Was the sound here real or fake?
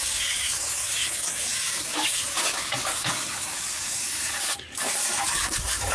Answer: fake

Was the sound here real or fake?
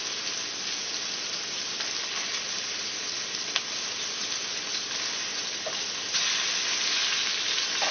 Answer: real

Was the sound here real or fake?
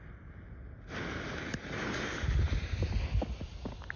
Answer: real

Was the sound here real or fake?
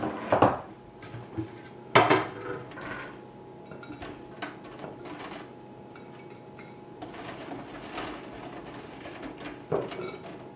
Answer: real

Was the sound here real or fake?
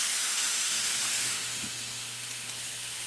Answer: fake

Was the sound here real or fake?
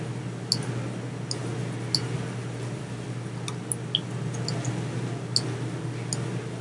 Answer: real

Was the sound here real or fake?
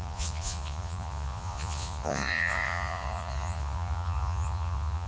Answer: fake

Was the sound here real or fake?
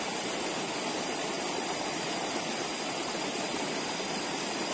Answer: real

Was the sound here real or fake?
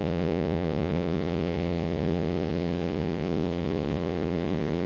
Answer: fake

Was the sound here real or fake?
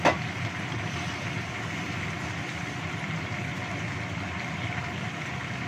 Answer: real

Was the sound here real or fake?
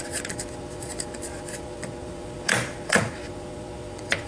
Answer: fake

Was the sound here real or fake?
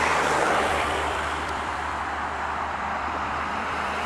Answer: fake